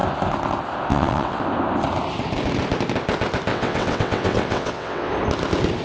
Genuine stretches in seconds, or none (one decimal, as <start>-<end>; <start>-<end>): 0.0-0.9; 1.4-3.5; 5.1-5.8